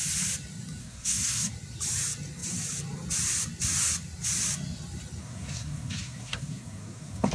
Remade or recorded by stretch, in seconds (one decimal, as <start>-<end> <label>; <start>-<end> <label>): 0.0-0.8 recorded; 0.8-1.5 remade; 1.5-5.2 recorded; 5.2-7.3 remade